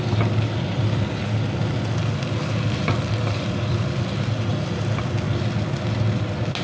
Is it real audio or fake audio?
real